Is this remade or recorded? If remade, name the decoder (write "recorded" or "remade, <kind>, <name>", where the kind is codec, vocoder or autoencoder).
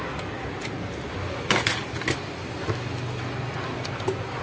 recorded